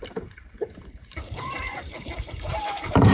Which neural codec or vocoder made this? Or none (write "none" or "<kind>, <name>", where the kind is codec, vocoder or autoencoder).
vocoder, BigVGAN v2